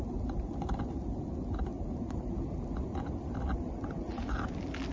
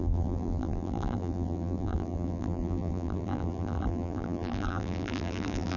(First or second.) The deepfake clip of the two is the second